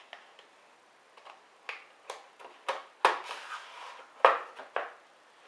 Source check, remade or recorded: recorded